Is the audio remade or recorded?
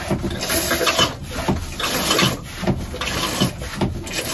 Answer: recorded